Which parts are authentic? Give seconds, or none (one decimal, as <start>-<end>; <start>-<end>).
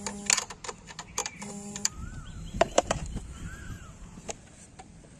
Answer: 0.0-1.2; 4.3-5.2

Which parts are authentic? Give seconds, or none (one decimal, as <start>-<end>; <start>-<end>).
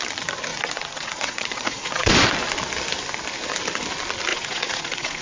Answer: 0.0-0.5; 2.1-4.3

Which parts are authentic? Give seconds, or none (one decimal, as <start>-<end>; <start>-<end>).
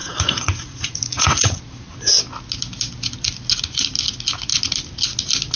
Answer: 1.6-5.6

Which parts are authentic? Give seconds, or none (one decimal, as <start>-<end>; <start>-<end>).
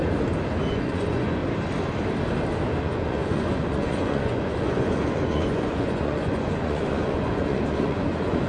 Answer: 0.0-0.7; 1.4-2.8